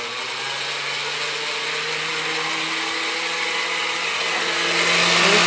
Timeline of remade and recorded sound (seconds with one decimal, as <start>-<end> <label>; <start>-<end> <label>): 0.0-5.5 recorded